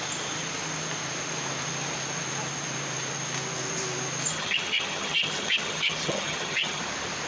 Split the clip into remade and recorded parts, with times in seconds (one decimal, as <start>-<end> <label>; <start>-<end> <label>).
0.0-4.3 recorded; 4.3-6.8 remade; 6.8-7.3 recorded